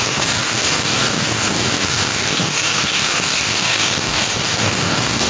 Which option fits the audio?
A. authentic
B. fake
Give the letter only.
B